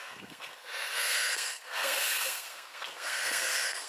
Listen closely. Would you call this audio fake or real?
fake